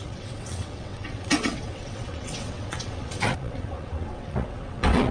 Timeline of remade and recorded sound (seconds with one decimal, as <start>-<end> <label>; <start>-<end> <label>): 0.0-5.1 remade